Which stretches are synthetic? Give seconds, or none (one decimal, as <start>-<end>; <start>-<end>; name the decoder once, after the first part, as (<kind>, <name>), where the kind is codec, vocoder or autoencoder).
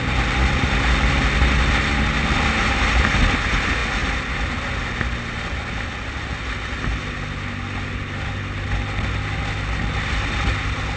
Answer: none